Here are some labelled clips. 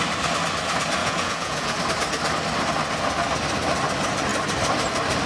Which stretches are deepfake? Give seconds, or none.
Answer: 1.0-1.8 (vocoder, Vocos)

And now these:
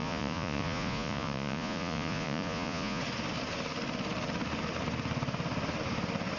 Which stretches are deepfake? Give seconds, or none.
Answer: 0.0-3.0 (vocoder, Vocos)

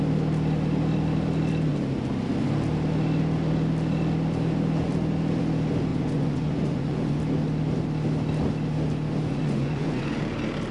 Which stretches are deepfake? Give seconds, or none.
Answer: 5.9-7.2 (vocoder, Vocos); 9.3-10.2

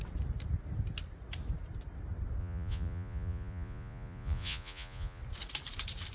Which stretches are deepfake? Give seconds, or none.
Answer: 2.4-5.2 (vocoder, Vocos)

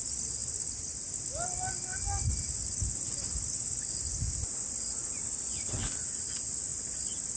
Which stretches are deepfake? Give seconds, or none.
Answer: none

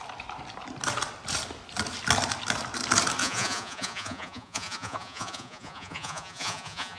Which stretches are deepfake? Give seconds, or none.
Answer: 3.2-7.0 (vocoder, Vocos)

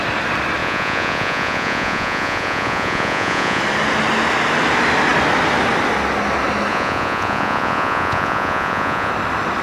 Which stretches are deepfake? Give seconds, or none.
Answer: 0.6-3.6 (vocoder, Vocos); 6.7-9.1

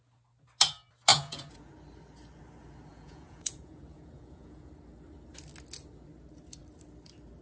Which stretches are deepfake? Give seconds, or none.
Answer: 1.1-1.7 (vocoder, Vocos); 2.9-4.7